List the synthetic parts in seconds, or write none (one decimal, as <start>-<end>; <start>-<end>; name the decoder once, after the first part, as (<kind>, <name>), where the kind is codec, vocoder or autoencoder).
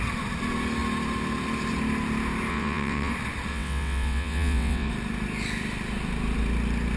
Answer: 2.5-3.1 (vocoder, WaveNeXt); 3.5-4.9